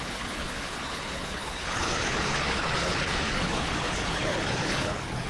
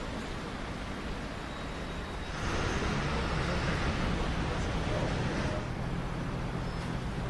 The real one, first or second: second